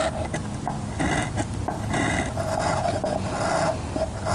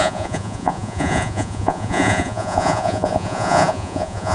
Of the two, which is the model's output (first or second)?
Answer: second